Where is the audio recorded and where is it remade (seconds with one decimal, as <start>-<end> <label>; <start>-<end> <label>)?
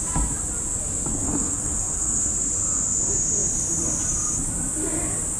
0.0-1.1 recorded; 1.1-2.3 remade; 2.3-5.4 recorded